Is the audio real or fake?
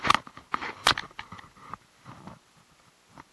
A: real